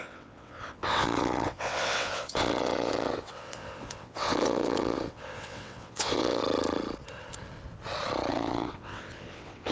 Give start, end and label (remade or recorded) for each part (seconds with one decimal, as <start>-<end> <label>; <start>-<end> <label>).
0.0-6.4 remade; 6.4-8.3 recorded; 8.3-9.7 remade